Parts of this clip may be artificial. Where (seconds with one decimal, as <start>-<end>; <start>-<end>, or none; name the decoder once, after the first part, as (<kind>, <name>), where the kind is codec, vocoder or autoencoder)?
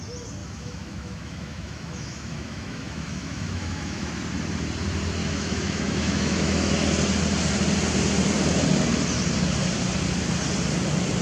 0.4-4.1 (autoencoder, DAC-VAE); 5.2-6.7